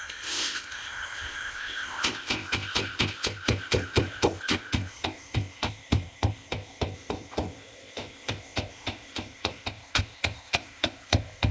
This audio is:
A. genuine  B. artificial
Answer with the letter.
B